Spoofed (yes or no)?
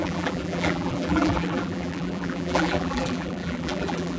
yes